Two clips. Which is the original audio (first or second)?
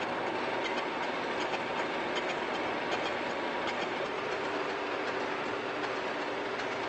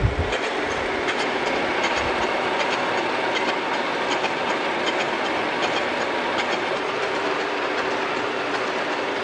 first